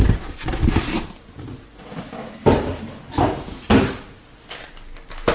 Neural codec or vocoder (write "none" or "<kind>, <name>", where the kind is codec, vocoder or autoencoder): none